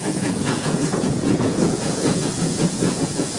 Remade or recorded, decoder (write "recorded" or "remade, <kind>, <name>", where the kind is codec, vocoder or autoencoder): remade, vocoder, Vocos